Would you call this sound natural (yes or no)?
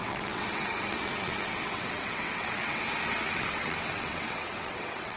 no